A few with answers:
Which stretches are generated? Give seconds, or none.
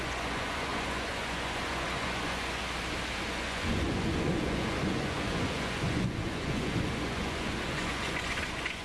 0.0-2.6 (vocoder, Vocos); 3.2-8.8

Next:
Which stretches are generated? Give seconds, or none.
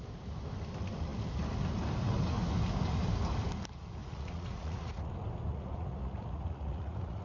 4.0-5.1 (vocoder, Vocos); 5.5-7.2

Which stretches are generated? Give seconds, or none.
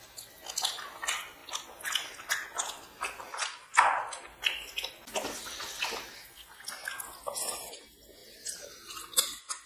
none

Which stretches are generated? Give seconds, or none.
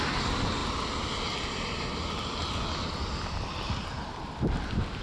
none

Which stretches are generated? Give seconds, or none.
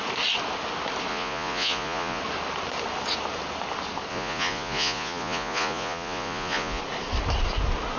1.1-2.2 (vocoder, Vocos); 4.1-6.8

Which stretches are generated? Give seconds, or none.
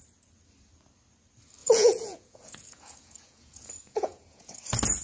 1.6-4.6 (vocoder, Vocos)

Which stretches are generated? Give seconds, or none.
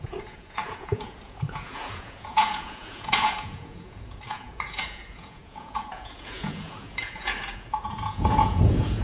0.0-9.0 (vocoder, Vocos)